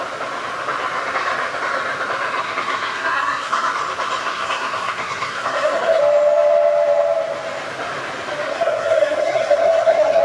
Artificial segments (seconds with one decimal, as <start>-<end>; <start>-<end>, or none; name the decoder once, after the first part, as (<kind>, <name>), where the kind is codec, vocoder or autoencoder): 2.4-3.7 (codec, SNAC); 4.2-6.0; 8.5-10.2